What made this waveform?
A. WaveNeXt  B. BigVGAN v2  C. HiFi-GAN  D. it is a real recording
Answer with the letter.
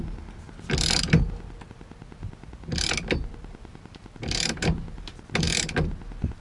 D